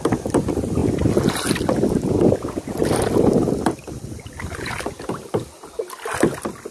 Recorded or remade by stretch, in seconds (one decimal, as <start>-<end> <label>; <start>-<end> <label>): 0.0-6.7 recorded